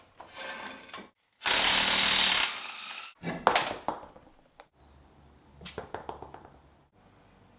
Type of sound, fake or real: real